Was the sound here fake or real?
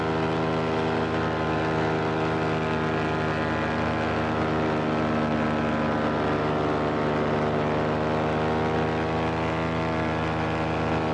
real